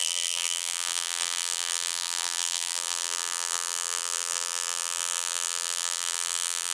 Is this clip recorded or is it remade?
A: remade